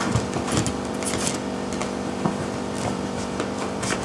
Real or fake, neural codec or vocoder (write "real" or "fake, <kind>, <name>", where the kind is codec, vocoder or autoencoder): fake, vocoder, BigVGAN v2